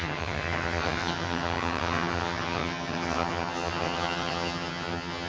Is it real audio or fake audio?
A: fake